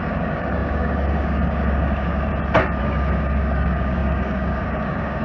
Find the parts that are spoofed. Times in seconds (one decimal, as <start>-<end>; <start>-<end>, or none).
0.0-2.3; 2.8-5.2